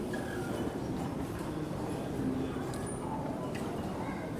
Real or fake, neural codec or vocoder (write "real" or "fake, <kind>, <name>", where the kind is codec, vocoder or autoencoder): real